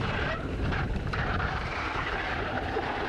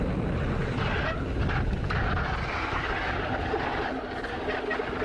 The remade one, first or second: first